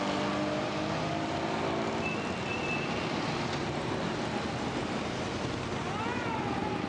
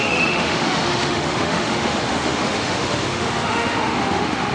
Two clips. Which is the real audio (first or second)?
first